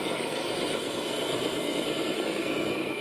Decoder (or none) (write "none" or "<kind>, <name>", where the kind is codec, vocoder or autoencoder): codec, SNAC